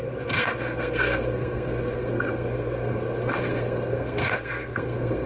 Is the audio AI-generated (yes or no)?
yes